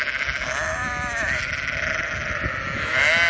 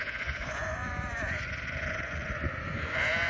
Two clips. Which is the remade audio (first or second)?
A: second